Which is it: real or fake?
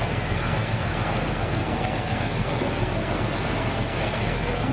fake